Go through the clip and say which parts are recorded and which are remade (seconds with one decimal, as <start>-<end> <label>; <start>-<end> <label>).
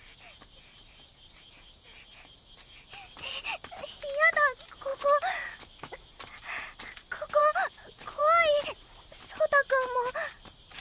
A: 0.0-4.9 recorded; 4.9-6.1 remade; 6.1-7.4 recorded; 7.4-8.2 remade; 8.2-10.8 recorded